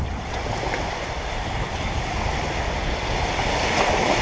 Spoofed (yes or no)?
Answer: no